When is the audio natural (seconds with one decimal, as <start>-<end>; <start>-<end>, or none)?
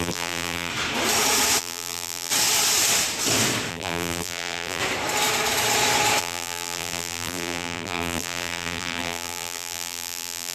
0.7-1.6; 2.3-3.7; 4.8-6.2